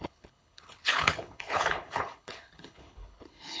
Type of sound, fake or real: fake